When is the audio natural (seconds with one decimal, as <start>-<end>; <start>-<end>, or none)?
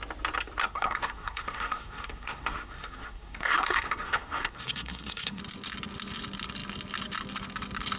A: 0.0-0.6; 5.4-8.0